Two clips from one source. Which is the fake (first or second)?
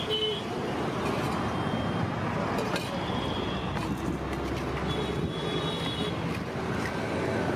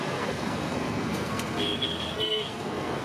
second